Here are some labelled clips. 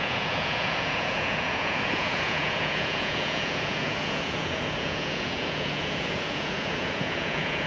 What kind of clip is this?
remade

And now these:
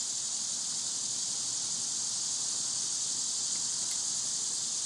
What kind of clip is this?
recorded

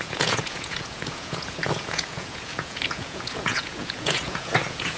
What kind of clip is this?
remade